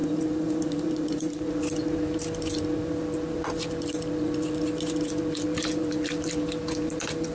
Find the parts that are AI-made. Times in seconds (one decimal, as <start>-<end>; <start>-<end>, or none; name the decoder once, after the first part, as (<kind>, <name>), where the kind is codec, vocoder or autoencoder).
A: 0.0-1.6 (vocoder, BigVGAN v2)

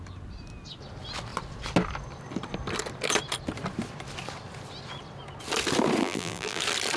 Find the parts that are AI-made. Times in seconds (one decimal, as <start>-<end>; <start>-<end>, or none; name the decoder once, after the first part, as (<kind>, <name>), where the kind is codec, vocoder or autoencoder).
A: 6.0-6.6 (vocoder, BigVGAN v2)

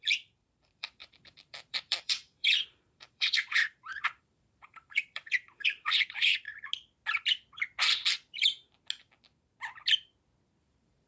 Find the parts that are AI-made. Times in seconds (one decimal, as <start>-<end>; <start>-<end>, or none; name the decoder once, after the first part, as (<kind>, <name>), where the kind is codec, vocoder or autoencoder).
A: 0.0-6.5 (vocoder, BigVGAN v2); 10.6-11.1

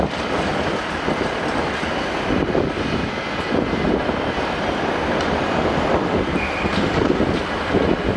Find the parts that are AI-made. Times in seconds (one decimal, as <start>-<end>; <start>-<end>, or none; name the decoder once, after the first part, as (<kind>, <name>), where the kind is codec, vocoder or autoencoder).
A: 0.0-8.2 (vocoder, BigVGAN v2)

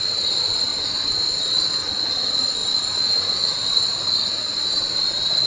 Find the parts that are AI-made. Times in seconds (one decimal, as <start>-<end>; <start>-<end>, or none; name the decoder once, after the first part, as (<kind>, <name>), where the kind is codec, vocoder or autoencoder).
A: 0.7-1.4 (vocoder, BigVGAN v2); 2.6-3.3; 4.4-5.1